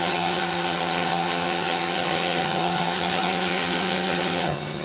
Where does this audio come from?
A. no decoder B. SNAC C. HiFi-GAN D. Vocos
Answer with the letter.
C